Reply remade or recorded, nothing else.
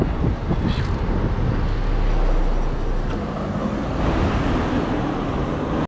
recorded